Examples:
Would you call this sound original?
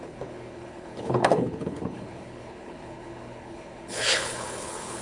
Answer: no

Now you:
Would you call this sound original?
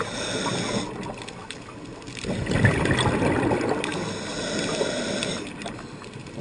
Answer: yes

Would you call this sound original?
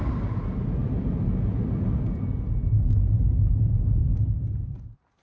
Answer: yes